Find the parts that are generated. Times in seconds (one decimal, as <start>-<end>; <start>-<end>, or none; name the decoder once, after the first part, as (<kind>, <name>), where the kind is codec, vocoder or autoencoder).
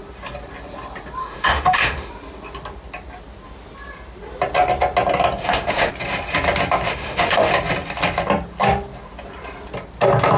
1.2-2.1 (autoencoder, DAC-VAE); 5.4-5.9; 6.9-7.5